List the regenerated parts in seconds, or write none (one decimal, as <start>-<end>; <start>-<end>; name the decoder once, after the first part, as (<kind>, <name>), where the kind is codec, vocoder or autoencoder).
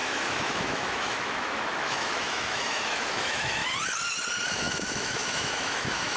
0.0-3.6 (autoencoder, DAC-VAE); 4.5-6.2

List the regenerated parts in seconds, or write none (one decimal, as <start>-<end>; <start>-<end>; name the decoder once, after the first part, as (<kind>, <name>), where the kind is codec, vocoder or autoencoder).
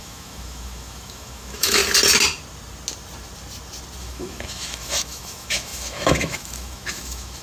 0.0-1.8 (autoencoder, DAC-VAE); 4.0-7.4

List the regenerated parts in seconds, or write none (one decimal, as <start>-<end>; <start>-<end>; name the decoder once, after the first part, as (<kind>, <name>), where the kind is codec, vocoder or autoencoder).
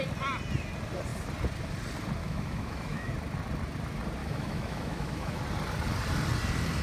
2.2-3.1 (autoencoder, DAC-VAE); 4.2-5.4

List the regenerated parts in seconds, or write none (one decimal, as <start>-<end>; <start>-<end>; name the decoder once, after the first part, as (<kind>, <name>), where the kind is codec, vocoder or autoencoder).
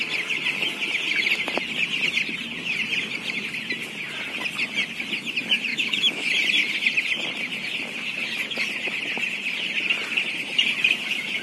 5.7-6.3 (autoencoder, DAC-VAE)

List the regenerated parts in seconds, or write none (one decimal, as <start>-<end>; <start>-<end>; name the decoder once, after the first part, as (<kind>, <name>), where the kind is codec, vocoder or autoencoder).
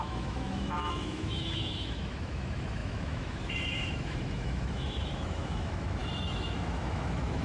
0.0-7.4 (autoencoder, DAC-VAE)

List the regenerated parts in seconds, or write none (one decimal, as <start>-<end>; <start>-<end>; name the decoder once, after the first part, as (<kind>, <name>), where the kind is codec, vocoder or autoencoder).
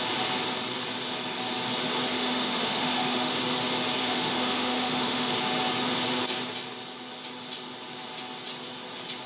2.1-3.4 (autoencoder, DAC-VAE); 4.0-5.3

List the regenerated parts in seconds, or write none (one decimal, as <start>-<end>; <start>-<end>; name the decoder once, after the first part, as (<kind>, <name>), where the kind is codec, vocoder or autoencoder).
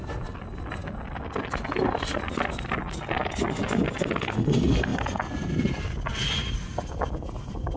none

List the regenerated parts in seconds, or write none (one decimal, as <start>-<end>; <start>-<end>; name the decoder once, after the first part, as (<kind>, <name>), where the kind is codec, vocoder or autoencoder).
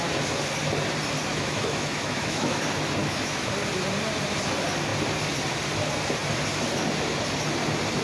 1.3-2.6 (autoencoder, DAC-VAE); 3.0-3.5